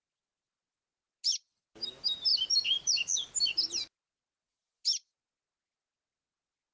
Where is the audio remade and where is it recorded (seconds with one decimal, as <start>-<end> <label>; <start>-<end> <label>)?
0.0-6.7 recorded

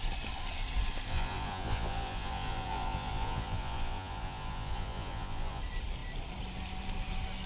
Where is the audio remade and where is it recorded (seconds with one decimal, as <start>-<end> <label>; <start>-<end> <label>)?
0.0-1.1 recorded; 1.1-5.6 remade; 5.6-7.5 recorded